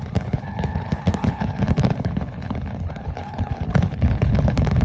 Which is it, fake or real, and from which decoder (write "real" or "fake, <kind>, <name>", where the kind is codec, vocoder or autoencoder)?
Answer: fake, codec, HILCodec